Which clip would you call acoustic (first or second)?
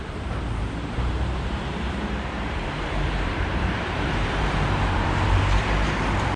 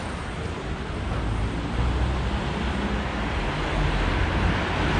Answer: second